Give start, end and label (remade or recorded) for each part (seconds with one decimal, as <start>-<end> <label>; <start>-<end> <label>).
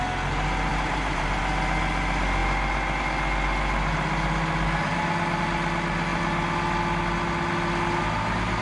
0.0-0.7 recorded; 0.7-1.4 remade; 1.4-8.6 recorded